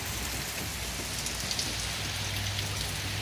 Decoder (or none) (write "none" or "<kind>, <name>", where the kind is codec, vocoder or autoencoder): none